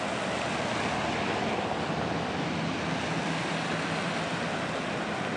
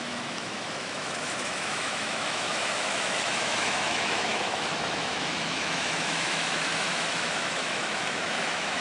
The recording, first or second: first